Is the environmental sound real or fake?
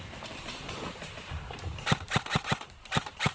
fake